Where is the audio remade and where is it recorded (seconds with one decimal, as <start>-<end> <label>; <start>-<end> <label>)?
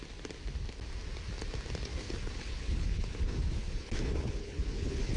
0.0-1.9 recorded; 1.9-5.2 remade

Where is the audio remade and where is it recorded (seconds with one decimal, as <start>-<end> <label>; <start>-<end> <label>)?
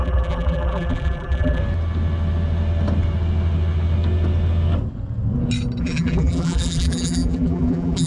0.0-1.6 remade; 1.6-5.8 recorded; 5.8-8.1 remade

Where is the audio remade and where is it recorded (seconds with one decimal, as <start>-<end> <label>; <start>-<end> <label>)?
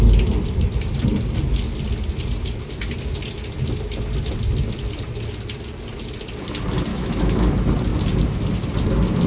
0.0-6.9 recorded; 6.9-7.5 remade; 7.5-9.3 recorded